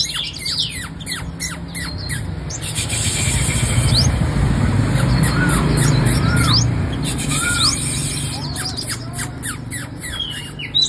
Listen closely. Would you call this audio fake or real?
real